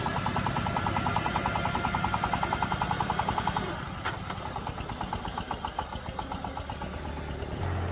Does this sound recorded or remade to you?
recorded